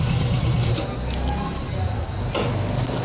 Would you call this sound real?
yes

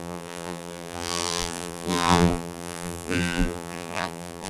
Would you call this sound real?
no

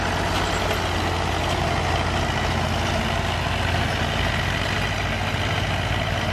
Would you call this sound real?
yes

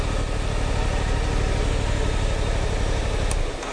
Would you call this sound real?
yes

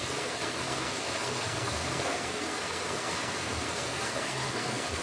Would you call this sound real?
no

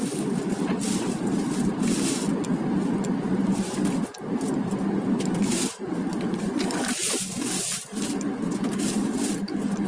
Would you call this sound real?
yes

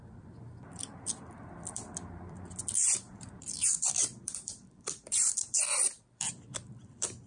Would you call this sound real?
no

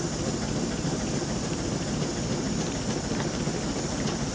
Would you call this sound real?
yes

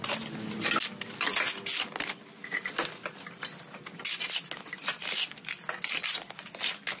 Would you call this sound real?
yes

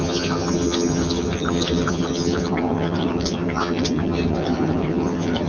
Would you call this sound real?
no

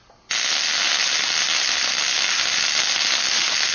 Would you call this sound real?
yes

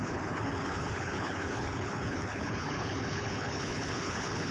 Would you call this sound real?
no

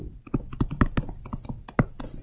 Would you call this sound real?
yes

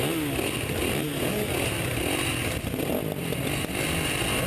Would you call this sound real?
yes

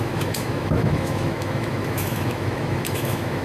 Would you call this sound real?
no